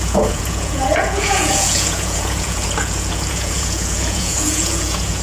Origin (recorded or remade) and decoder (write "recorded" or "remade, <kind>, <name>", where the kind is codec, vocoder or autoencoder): remade, vocoder, Vocos